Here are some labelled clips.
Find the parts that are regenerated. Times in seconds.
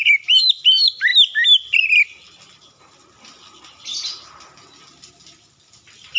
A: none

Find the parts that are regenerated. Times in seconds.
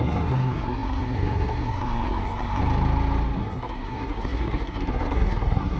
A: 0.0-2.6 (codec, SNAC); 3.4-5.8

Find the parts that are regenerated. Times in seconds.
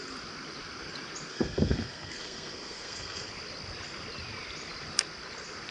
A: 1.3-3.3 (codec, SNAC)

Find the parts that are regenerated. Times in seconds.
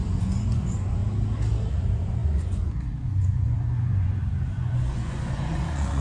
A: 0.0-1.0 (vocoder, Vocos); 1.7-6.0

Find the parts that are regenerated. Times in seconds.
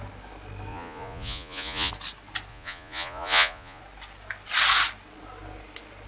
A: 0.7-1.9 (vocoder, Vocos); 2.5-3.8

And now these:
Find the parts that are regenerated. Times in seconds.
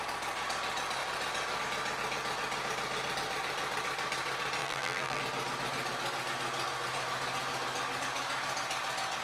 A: 4.6-5.2 (vocoder, BigVGAN v2)